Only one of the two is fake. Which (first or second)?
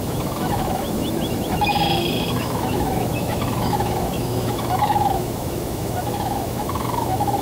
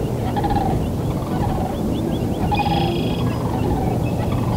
first